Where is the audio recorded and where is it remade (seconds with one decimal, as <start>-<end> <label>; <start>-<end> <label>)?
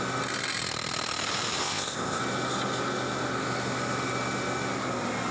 0.0-1.6 recorded; 1.6-2.2 remade; 2.2-5.3 recorded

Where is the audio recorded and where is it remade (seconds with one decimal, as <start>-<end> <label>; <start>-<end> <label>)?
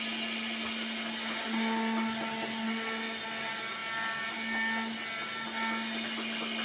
0.0-6.6 recorded